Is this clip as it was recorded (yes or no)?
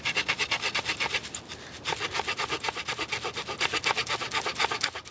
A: yes